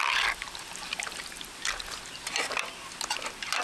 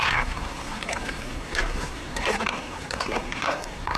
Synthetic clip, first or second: second